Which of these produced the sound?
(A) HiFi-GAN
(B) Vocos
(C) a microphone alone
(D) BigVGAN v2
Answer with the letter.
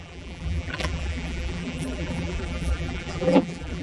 D